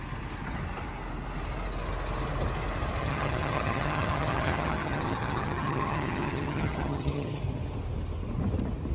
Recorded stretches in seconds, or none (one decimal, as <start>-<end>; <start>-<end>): 0.0-3.0; 7.4-8.9

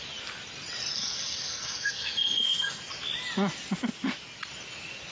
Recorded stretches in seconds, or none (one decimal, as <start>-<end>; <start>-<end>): 0.0-0.9; 2.8-5.1

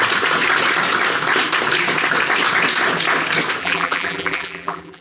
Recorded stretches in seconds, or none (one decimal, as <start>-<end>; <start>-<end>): 0.0-3.6

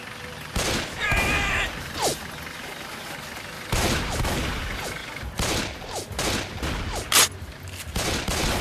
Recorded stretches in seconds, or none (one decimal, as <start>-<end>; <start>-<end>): 0.0-2.1; 4.0-8.6